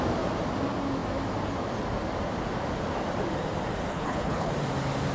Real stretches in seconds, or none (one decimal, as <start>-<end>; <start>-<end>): 0.0-3.9; 4.5-5.1